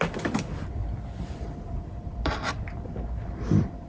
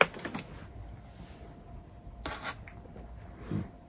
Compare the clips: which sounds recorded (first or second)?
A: second